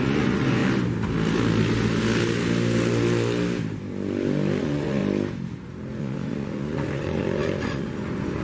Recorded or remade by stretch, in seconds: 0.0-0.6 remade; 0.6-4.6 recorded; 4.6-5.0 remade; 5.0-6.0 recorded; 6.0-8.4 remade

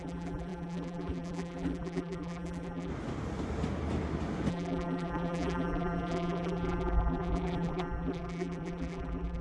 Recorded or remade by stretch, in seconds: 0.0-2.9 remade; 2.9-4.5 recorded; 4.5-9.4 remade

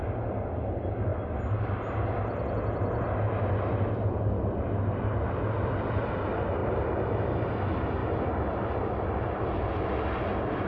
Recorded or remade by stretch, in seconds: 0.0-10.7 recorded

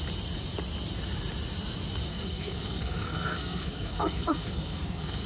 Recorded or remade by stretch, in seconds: 0.0-2.1 recorded; 2.1-5.3 remade